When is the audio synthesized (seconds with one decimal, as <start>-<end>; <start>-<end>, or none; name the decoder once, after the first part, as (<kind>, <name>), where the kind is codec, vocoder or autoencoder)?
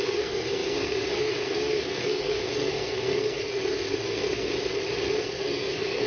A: 0.0-4.5 (codec, SNAC); 5.2-6.1